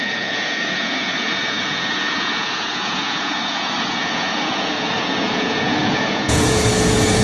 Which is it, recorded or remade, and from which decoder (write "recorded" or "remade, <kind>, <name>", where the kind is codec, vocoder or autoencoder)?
remade, vocoder, Vocos